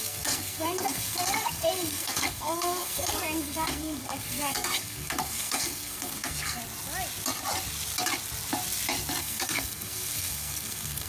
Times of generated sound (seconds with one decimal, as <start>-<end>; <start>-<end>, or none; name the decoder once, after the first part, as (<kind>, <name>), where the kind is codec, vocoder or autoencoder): 0.0-6.6 (codec, SNAC); 9.2-11.1